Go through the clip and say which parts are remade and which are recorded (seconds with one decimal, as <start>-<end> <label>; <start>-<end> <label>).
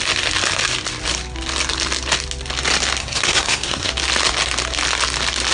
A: 0.0-3.0 recorded; 3.0-3.9 remade; 3.9-5.5 recorded